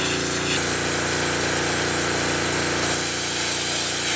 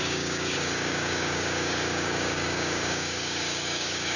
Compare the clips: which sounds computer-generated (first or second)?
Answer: second